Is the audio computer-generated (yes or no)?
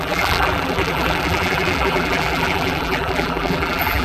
yes